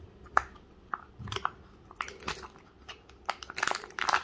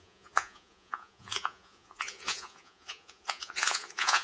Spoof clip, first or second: second